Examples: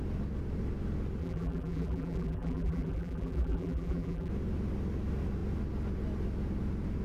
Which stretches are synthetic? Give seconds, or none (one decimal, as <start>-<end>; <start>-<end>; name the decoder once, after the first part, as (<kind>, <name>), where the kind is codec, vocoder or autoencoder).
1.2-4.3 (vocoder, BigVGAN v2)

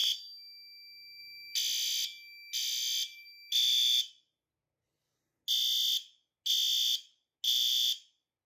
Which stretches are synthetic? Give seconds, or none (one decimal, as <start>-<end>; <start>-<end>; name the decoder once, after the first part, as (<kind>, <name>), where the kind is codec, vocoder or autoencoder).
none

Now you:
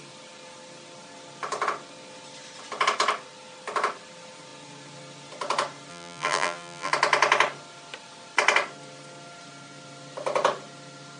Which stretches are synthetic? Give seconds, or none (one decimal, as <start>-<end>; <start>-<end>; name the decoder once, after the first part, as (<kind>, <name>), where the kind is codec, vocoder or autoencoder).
5.9-6.9 (vocoder, BigVGAN v2)